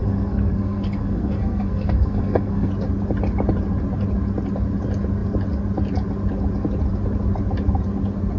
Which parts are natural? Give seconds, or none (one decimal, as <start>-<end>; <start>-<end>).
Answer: 2.7-8.4